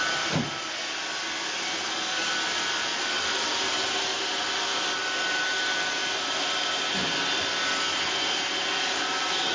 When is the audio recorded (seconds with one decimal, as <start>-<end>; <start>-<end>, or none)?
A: 0.0-9.5